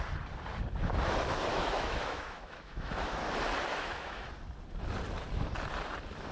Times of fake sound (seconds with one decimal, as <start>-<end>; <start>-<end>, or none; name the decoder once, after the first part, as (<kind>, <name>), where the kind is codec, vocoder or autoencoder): 1.5-3.3 (autoencoder, DAC-VAE); 3.7-4.3